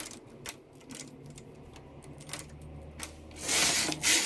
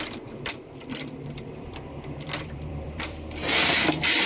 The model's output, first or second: second